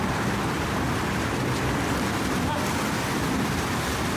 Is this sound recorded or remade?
recorded